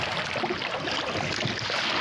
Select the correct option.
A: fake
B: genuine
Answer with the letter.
B